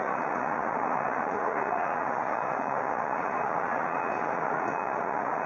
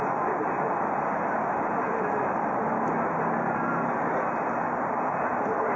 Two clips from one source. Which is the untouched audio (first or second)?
second